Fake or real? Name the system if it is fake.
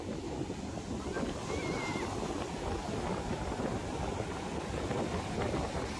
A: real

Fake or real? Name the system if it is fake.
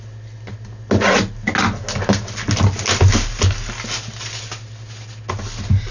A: real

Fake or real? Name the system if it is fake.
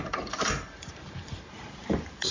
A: fake, vocoder, BigVGAN v2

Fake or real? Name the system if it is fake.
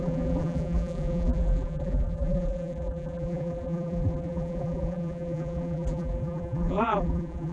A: fake, vocoder, BigVGAN v2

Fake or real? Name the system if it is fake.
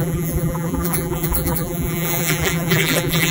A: fake, vocoder, BigVGAN v2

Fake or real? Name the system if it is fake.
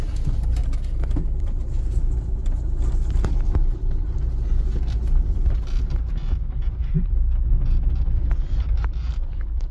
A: real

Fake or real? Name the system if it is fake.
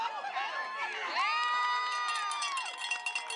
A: real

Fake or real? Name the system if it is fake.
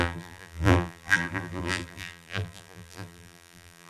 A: fake, vocoder, BigVGAN v2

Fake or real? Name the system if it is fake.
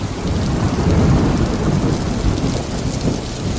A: real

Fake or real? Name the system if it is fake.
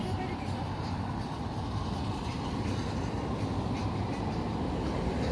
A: fake, vocoder, BigVGAN v2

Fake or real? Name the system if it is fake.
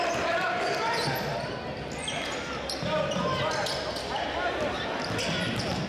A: fake, vocoder, BigVGAN v2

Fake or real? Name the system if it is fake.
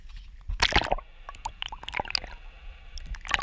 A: real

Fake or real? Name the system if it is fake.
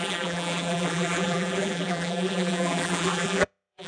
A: fake, vocoder, BigVGAN v2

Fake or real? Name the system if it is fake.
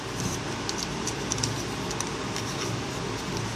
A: real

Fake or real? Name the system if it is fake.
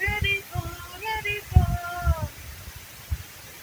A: real